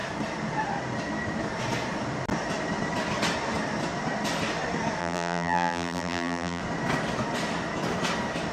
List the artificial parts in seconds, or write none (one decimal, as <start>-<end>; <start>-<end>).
5.0-6.6